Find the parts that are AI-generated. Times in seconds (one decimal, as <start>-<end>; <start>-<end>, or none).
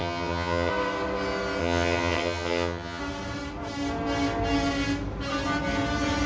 0.0-0.7; 1.6-3.0